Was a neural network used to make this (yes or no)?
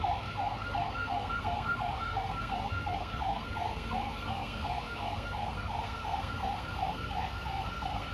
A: yes